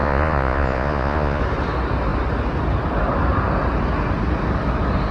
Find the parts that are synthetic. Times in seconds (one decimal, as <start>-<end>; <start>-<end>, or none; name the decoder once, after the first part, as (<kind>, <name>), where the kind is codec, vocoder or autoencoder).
0.0-1.4 (vocoder, Vocos)